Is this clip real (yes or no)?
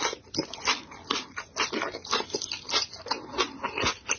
yes